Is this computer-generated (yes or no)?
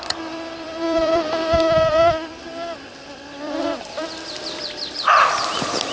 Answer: yes